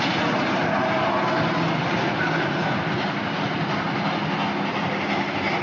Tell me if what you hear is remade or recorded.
recorded